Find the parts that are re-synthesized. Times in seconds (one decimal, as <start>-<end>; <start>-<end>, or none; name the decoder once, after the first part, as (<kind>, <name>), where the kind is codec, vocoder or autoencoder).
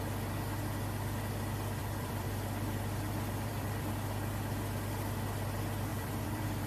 1.8-3.9 (vocoder, BigVGAN v2); 5.9-6.7